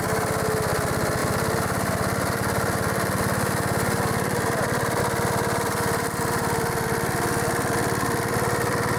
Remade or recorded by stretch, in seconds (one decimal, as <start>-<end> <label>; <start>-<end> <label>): 0.0-1.2 recorded; 1.2-5.0 remade; 5.0-9.0 recorded